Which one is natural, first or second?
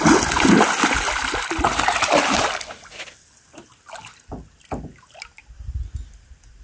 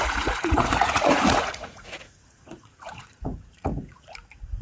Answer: first